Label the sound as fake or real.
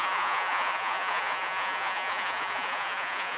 fake